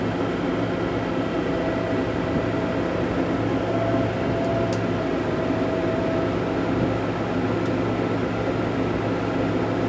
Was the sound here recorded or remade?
recorded